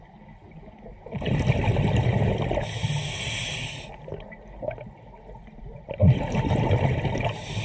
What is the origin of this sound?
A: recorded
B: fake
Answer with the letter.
A